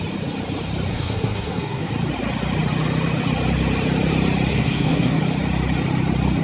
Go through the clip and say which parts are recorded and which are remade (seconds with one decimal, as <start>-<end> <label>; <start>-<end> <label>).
0.0-0.9 recorded; 0.9-1.9 remade; 1.9-4.5 recorded; 4.5-5.2 remade; 5.2-6.4 recorded